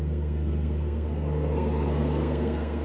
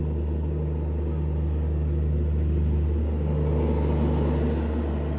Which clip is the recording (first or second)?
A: second